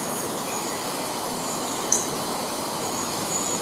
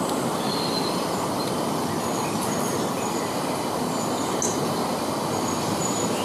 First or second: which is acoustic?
second